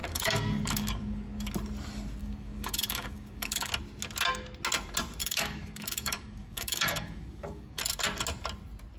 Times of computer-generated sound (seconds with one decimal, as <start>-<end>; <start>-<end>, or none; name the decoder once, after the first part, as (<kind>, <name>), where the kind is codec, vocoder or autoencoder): 0.0-1.5 (codec, DAC); 2.2-3.7; 5.2-7.8